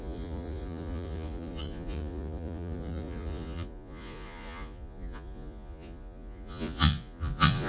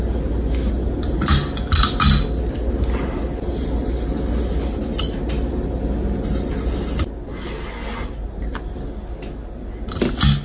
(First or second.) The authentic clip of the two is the second